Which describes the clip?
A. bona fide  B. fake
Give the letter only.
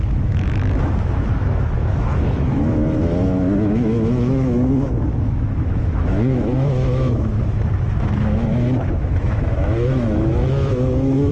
B